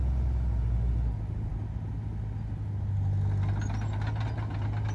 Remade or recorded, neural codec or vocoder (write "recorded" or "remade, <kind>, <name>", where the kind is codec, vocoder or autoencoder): recorded